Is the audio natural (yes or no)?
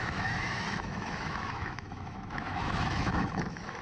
no